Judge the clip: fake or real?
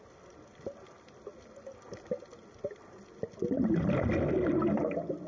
real